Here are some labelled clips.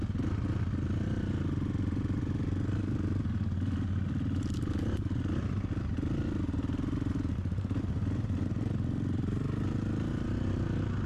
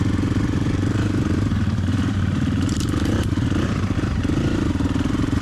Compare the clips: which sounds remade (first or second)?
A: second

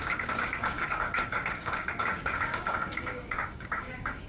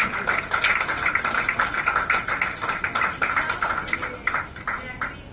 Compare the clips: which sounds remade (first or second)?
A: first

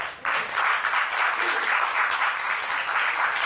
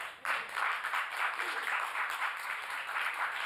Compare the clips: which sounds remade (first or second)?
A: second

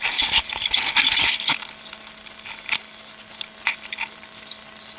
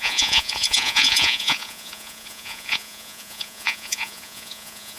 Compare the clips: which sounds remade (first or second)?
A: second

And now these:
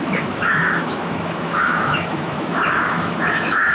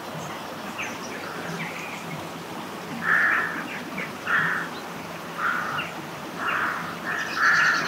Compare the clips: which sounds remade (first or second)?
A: first